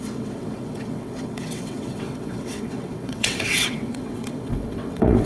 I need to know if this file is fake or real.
fake